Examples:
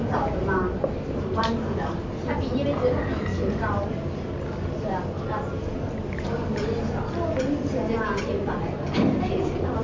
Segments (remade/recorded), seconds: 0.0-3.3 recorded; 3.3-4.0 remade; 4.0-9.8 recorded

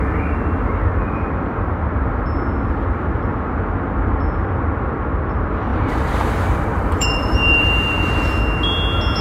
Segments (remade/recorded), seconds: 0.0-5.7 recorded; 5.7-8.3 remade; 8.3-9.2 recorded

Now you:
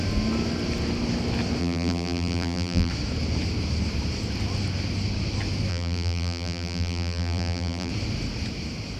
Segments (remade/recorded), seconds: 0.0-1.6 recorded; 1.6-2.9 remade; 2.9-5.7 recorded; 5.7-7.9 remade; 7.9-9.0 recorded